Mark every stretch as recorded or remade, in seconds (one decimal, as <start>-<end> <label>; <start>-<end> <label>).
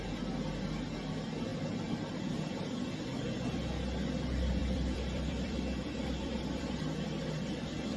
0.0-1.5 recorded; 1.5-2.2 remade; 2.2-4.6 recorded; 4.6-6.7 remade; 6.7-8.0 recorded